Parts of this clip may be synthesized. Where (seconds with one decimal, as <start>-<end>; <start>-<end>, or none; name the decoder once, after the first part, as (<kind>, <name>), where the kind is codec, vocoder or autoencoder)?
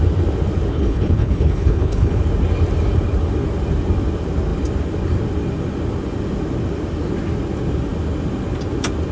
0.7-2.2 (codec, HILCodec)